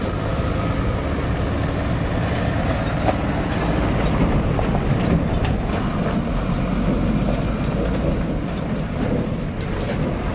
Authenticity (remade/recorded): recorded